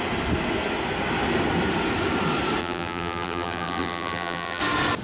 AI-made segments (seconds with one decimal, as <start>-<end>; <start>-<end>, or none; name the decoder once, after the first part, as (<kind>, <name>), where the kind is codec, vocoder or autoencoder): 2.6-4.6 (vocoder, BigVGAN v2)